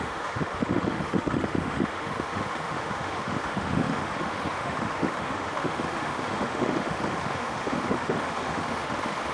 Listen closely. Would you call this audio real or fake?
fake